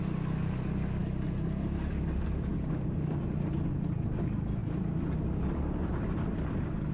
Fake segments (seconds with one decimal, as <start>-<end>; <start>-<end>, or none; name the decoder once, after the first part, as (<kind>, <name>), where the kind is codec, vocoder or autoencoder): 2.5-3.2 (codec, DAC)